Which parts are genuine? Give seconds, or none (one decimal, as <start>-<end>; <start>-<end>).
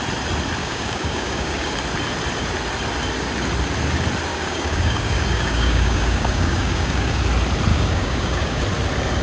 0.0-0.6; 1.8-4.3; 7.2-7.7; 8.6-9.2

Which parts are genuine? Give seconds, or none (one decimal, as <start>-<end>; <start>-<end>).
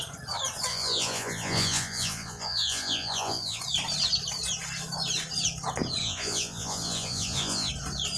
0.0-0.7; 3.6-6.0; 7.7-8.2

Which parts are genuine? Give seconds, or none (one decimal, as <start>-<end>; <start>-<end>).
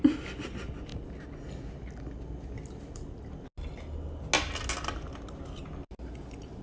0.0-6.6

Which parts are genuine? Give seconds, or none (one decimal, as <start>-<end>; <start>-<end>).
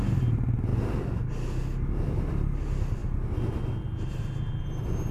0.0-5.1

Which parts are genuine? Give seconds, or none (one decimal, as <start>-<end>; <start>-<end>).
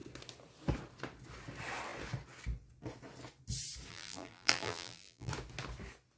0.0-3.9; 5.3-6.2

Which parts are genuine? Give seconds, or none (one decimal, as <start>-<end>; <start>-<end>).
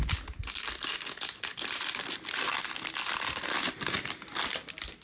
0.0-5.0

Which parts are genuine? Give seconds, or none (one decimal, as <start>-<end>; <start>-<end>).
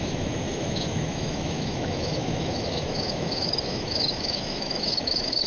none